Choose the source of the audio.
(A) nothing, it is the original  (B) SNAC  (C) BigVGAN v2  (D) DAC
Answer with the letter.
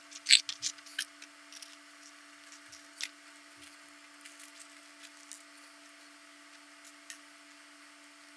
A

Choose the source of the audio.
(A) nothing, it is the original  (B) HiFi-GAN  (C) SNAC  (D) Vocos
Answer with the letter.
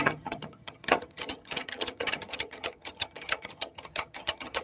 B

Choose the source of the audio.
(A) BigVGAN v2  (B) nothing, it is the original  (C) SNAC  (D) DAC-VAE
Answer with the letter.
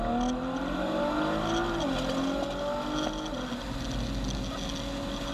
B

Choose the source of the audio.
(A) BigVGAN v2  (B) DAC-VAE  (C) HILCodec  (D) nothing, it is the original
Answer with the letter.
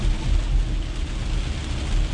D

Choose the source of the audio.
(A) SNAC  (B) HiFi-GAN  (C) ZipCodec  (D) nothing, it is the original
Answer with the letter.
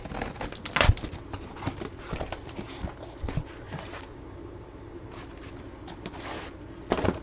D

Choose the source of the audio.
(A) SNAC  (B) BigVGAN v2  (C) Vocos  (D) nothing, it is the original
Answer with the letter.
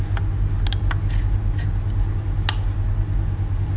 D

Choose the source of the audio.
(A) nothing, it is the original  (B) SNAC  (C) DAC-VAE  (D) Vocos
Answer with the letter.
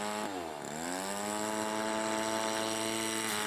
A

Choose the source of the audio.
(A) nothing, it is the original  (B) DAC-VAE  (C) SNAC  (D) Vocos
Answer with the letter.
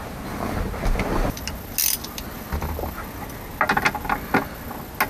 A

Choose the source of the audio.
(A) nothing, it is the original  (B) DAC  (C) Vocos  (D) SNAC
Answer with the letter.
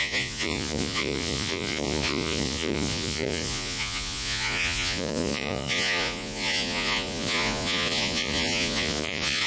C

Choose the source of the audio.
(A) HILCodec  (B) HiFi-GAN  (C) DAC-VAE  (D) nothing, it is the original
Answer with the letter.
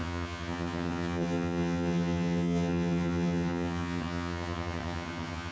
B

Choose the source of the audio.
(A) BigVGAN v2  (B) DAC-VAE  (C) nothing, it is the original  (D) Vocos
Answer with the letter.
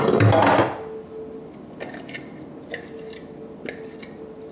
C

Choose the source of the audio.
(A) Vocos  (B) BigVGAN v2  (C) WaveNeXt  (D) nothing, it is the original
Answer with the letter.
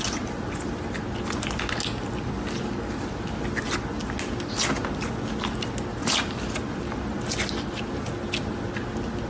D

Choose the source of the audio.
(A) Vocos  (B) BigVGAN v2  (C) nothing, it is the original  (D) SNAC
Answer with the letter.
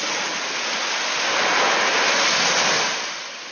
C